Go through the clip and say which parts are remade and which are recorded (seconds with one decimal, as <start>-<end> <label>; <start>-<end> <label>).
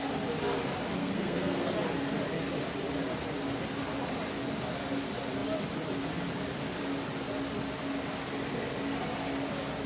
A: 0.0-1.0 recorded; 1.0-1.7 remade; 1.7-9.9 recorded